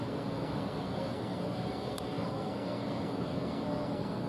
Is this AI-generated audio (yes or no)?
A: yes